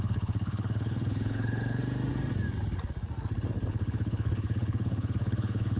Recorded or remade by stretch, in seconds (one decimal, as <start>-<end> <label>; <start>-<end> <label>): 0.0-1.8 remade; 1.8-3.7 recorded; 3.7-5.8 remade